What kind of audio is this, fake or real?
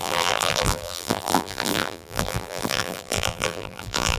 fake